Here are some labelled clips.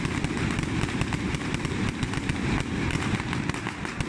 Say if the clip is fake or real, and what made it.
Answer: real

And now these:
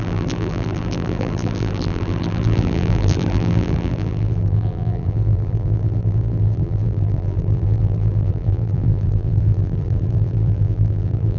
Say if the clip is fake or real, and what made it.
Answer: fake, vocoder, BigVGAN v2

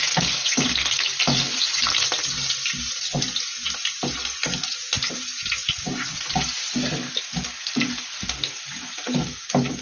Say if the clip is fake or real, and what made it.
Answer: real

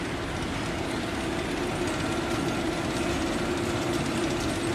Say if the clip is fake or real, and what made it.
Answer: real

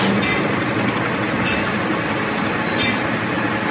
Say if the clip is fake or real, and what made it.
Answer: real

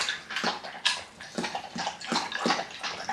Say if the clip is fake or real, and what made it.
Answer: real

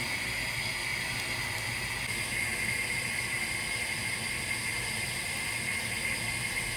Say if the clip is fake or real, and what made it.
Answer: real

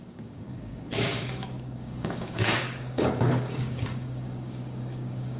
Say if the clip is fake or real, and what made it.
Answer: fake, codec, DAC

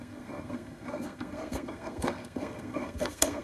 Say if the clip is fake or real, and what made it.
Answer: fake, codec, SNAC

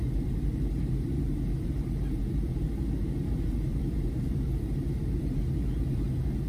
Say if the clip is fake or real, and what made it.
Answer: fake, vocoder, BigVGAN v2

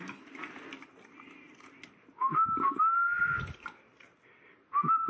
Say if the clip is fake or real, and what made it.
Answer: real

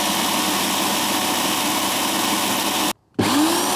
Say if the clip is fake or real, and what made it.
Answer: real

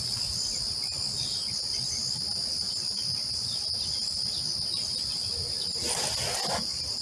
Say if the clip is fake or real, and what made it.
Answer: real